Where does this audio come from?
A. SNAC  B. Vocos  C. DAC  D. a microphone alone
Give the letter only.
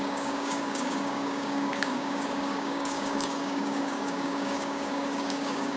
C